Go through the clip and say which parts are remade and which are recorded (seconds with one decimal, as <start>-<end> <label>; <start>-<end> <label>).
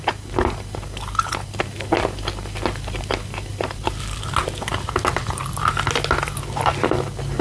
0.0-3.5 recorded; 3.5-7.4 remade